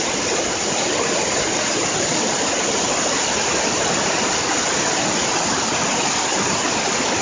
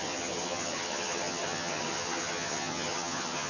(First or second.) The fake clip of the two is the second